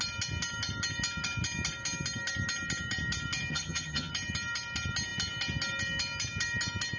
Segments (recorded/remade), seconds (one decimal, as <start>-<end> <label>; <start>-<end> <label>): 0.0-3.5 recorded; 3.5-4.1 remade; 4.1-7.0 recorded